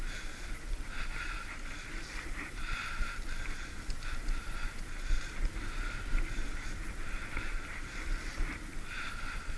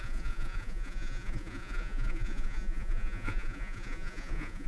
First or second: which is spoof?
second